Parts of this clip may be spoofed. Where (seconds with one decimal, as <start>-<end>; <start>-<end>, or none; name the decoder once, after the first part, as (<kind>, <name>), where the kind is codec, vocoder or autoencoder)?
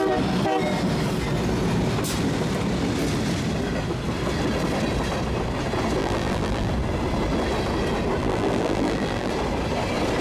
6.0-6.7 (vocoder, BigVGAN v2); 8.2-9.3